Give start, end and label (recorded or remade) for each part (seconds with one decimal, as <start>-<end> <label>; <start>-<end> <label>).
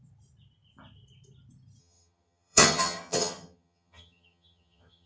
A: 0.0-1.8 recorded; 1.8-5.1 remade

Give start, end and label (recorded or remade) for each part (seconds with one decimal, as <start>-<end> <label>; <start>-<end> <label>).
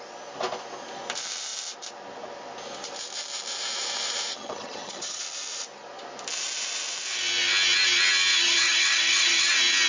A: 0.0-4.3 recorded; 4.3-5.2 remade; 5.2-8.3 recorded; 8.3-9.5 remade; 9.5-9.9 recorded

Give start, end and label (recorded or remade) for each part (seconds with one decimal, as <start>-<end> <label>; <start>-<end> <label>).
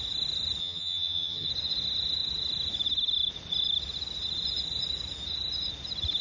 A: 0.0-0.6 recorded; 0.6-1.5 remade; 1.5-6.2 recorded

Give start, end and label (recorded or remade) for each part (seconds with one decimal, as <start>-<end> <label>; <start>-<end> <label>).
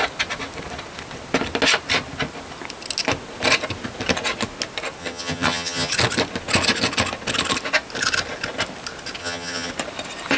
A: 0.0-5.0 recorded; 5.0-5.9 remade; 5.9-9.2 recorded; 9.2-9.7 remade; 9.7-10.4 recorded